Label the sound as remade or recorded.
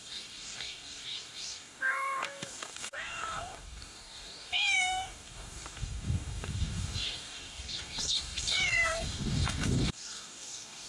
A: remade